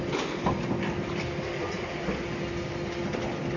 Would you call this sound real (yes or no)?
yes